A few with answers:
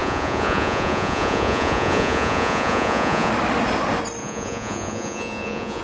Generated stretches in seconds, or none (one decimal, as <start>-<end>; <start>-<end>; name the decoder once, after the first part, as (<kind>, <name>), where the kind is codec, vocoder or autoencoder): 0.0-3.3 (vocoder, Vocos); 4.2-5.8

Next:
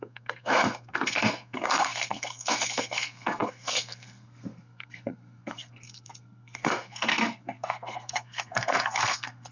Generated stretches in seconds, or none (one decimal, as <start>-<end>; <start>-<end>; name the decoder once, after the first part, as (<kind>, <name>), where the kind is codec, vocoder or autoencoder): 0.0-9.5 (codec, SNAC)

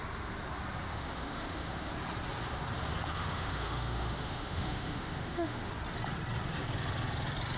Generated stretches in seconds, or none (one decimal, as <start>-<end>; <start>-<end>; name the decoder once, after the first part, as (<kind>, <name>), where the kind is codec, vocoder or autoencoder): 0.9-1.9 (autoencoder, DAC-VAE); 3.1-5.7

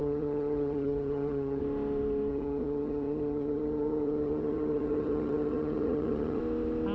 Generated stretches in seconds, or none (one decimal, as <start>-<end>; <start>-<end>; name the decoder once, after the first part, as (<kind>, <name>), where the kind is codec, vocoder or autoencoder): 0.0-1.6 (vocoder, HiFi-GAN); 2.3-6.4

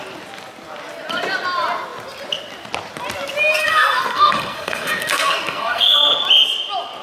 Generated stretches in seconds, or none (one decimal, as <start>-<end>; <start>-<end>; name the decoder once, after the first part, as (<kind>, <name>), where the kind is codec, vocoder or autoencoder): 3.6-6.2 (codec, SNAC)

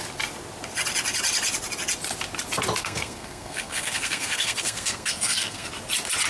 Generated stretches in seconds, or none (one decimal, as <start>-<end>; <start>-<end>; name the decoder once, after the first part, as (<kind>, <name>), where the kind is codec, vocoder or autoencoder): 2.8-5.7 (codec, SNAC)

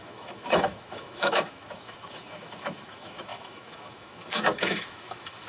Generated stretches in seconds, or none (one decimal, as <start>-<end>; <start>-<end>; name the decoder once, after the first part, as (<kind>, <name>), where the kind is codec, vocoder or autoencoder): 0.0-5.5 (autoencoder, DAC-VAE)

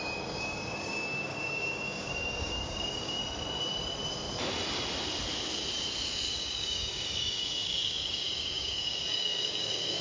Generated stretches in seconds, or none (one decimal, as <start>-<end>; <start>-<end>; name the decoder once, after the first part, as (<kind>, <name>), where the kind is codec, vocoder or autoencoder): 0.0-3.2 (codec, DAC); 6.3-10.0